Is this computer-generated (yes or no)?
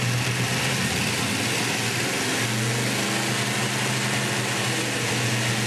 no